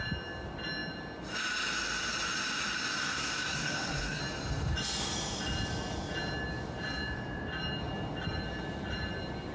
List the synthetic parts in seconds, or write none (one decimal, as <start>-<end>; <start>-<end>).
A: 3.0-4.2